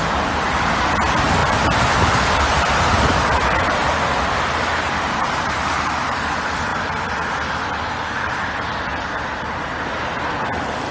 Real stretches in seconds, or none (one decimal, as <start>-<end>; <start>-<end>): 6.7-7.8; 8.9-9.4